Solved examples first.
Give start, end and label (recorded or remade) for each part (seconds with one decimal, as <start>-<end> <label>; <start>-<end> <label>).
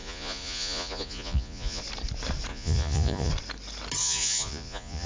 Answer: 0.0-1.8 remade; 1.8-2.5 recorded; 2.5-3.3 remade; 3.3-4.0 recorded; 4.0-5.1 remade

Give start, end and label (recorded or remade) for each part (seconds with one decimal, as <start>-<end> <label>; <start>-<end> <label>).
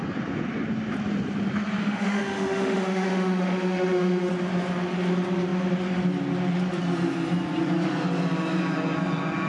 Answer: 0.0-1.8 recorded; 1.8-4.3 remade; 4.3-9.5 recorded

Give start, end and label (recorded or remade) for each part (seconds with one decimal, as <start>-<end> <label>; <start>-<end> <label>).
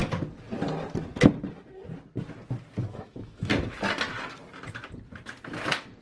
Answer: 0.0-2.8 recorded; 2.8-3.5 remade; 3.5-6.0 recorded